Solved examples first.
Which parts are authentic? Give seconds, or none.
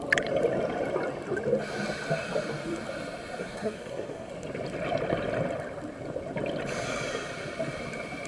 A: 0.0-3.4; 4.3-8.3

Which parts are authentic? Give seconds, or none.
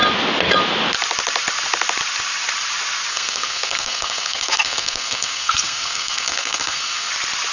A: 0.0-3.1; 7.1-7.5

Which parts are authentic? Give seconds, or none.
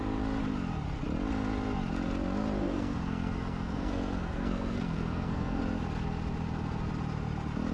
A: 0.0-2.6; 5.6-7.7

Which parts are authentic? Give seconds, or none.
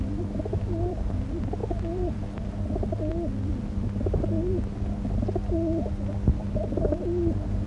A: 0.0-7.7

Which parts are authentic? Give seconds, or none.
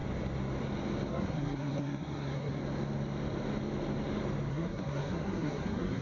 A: 0.0-1.1; 2.6-4.5